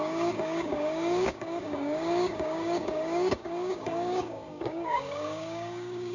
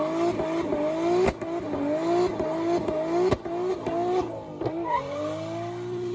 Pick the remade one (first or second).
first